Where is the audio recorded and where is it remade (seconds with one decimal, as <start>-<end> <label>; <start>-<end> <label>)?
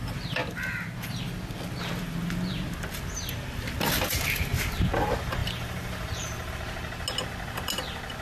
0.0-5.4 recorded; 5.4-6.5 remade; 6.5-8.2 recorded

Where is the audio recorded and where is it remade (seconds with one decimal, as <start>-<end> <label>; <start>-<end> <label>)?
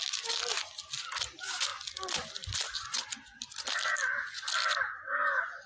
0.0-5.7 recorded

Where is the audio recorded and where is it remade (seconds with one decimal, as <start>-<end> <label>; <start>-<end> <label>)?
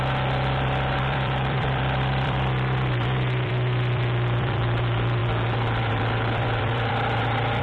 0.0-5.2 remade; 5.2-5.9 recorded; 5.9-7.6 remade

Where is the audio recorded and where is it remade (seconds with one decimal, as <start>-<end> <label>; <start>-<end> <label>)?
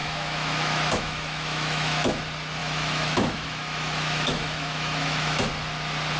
0.0-2.2 remade; 2.2-2.6 recorded; 2.6-5.5 remade; 5.5-6.2 recorded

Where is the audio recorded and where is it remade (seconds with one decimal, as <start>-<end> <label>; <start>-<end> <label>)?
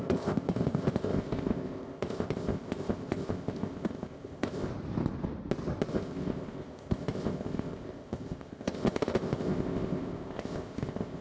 0.0-4.7 remade; 4.7-5.9 recorded; 5.9-11.2 remade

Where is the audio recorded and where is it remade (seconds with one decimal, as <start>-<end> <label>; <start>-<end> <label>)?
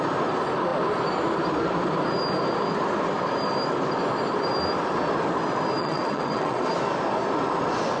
0.0-5.8 recorded; 5.8-6.7 remade; 6.7-8.0 recorded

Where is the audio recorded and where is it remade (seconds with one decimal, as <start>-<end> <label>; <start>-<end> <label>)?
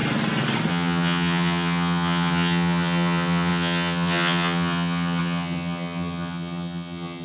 0.0-0.7 recorded; 0.7-7.2 remade